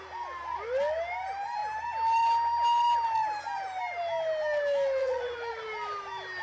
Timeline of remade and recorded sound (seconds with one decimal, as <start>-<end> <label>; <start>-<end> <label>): 0.0-5.0 recorded; 5.0-5.5 remade; 5.5-6.4 recorded